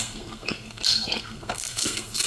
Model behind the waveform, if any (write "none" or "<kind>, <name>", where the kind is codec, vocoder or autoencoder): codec, SNAC